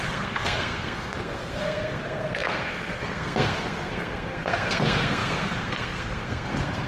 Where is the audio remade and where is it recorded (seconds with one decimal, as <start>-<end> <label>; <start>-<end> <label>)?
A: 0.0-6.9 remade